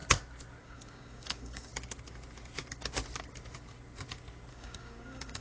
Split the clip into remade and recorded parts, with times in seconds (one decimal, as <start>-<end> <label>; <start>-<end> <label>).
0.0-0.6 recorded; 0.6-1.7 remade; 1.7-4.5 recorded; 4.5-5.4 remade